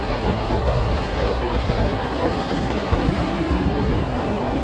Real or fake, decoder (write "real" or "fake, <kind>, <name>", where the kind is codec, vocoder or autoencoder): fake, codec, SNAC